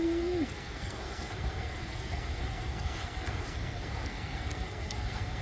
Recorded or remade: remade